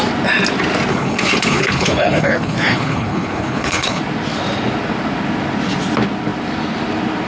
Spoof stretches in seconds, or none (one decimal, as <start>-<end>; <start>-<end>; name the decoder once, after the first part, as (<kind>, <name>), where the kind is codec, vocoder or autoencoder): 0.9-4.0 (codec, HILCodec)

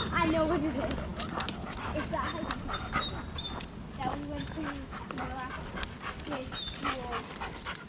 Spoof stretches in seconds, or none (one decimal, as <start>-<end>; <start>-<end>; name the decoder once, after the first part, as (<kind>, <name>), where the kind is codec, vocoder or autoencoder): 4.1-5.0 (autoencoder, DAC-VAE)

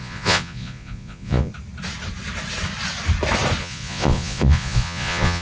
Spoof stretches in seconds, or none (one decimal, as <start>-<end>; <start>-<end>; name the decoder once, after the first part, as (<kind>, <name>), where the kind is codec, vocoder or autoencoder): 0.0-1.5 (vocoder, Vocos); 3.6-5.4

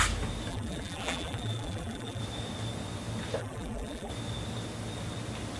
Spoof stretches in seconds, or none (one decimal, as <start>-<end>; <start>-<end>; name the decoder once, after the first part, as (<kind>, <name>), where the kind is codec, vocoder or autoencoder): 0.5-2.2 (vocoder, BigVGAN v2); 3.4-4.1